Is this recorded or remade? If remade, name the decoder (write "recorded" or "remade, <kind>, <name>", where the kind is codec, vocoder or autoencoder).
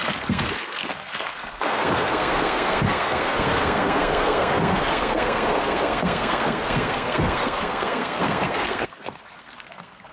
remade, codec, SNAC